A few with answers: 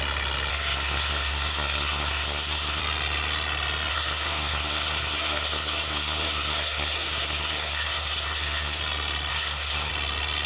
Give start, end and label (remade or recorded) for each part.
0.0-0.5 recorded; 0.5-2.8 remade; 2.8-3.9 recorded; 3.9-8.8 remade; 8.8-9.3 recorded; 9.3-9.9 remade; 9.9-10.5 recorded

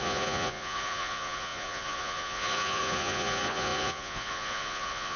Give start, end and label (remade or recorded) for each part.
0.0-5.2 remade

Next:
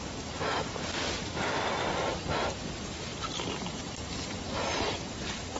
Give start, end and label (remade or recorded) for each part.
0.0-5.6 recorded